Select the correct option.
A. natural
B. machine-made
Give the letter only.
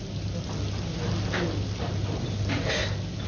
A